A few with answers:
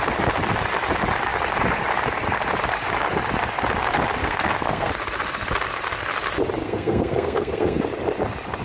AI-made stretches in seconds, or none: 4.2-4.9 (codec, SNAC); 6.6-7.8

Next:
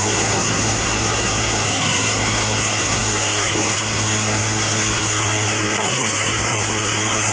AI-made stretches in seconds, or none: 0.0-7.3 (codec, SNAC)

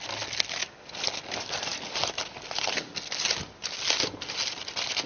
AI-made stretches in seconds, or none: none

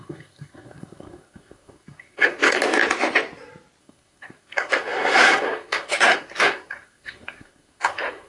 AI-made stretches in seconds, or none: 0.0-2.6 (codec, SNAC); 3.8-8.3

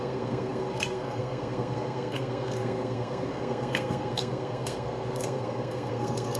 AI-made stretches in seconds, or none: 0.0-6.4 (codec, SNAC)

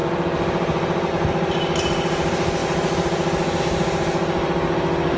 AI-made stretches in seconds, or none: none

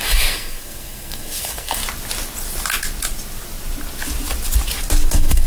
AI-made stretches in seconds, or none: 0.0-1.8 (codec, SNAC); 5.1-5.5